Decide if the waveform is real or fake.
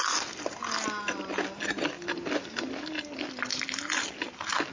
real